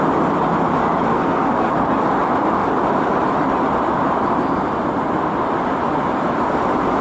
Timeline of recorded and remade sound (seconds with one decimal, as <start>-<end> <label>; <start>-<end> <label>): 0.0-1.1 recorded; 1.1-1.8 remade; 1.8-7.0 recorded

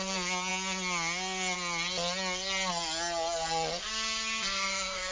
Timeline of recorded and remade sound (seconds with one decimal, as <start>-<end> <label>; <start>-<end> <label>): 0.0-3.8 recorded; 3.8-5.1 remade

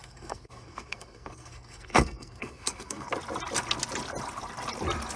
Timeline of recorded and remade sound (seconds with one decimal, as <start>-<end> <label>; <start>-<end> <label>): 0.0-3.1 remade; 3.1-5.2 recorded

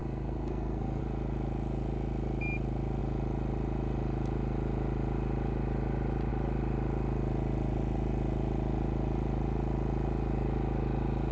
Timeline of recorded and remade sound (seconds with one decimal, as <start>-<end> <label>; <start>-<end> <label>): 0.0-1.0 remade; 1.0-11.3 recorded